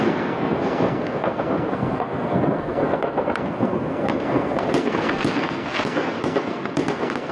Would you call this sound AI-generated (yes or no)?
yes